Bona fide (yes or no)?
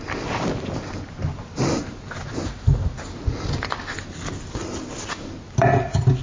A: yes